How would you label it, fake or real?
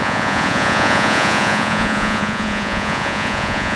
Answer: fake